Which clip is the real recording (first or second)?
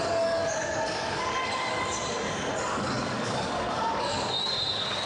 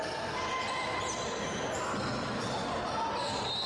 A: second